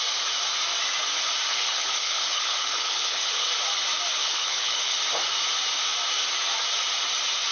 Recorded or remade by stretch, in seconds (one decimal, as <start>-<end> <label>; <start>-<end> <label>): 0.0-1.5 recorded; 1.5-3.5 remade; 3.5-4.2 recorded; 4.2-5.0 remade; 5.0-7.5 recorded